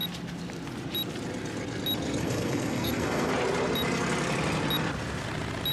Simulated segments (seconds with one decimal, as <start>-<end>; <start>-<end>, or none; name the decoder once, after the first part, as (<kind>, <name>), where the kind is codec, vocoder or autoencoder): 2.2-3.3 (codec, SNAC)

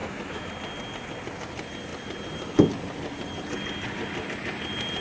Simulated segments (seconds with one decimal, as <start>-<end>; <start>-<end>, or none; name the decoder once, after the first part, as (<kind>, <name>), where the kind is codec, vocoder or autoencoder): 0.0-0.5 (autoencoder, DAC-VAE)

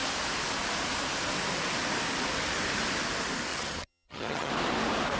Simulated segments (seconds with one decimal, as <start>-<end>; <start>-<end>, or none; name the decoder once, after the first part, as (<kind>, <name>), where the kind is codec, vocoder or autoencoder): 3.5-4.5 (vocoder, HiFi-GAN)

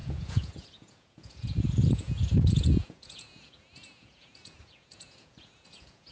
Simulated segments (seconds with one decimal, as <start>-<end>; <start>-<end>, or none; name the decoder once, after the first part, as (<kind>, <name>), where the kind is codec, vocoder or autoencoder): 0.0-6.1 (vocoder, Vocos)

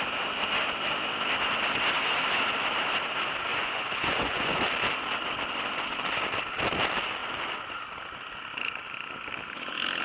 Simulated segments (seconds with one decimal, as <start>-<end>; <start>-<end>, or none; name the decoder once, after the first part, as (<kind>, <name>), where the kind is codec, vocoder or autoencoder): 3.5-4.6 (vocoder, Vocos)